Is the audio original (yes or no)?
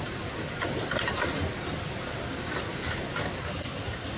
yes